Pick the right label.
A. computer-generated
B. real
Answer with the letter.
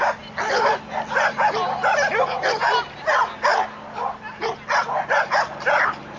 B